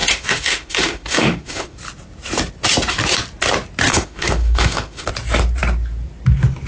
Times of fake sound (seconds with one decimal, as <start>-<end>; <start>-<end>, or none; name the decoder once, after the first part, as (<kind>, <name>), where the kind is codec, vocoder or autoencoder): 0.0-1.8 (autoencoder, DAC-VAE); 3.9-5.1